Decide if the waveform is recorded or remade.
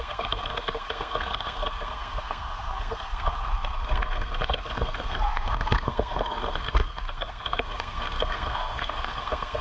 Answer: remade